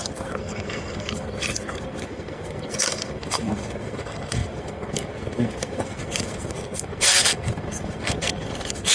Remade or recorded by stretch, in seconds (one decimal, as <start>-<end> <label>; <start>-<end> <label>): 0.0-8.9 remade